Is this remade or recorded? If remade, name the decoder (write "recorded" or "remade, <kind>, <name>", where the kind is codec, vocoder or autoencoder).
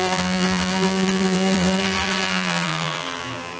remade, vocoder, BigVGAN v2